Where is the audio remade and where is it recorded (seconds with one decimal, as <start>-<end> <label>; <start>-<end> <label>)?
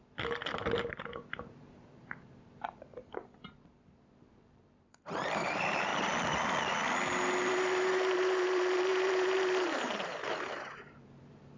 0.0-2.9 remade; 2.9-4.3 recorded; 4.3-5.9 remade; 5.9-7.5 recorded; 7.5-11.6 remade